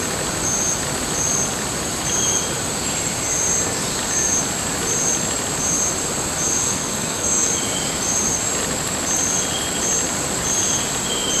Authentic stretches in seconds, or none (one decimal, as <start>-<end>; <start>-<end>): 0.0-6.6; 7.5-11.4